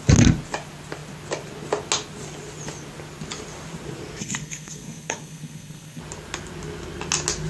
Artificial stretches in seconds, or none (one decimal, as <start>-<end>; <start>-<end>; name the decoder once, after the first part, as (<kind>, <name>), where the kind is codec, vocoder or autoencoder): 4.2-6.0 (codec, SNAC)